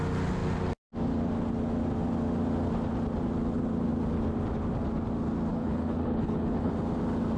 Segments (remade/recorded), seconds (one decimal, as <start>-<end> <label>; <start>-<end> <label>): 0.0-5.5 recorded; 5.5-6.7 remade; 6.7-7.4 recorded